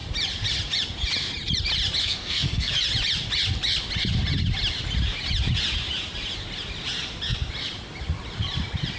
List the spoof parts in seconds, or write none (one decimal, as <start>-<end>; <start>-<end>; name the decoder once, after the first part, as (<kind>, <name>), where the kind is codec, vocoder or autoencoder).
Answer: 2.0-2.7 (codec, SNAC)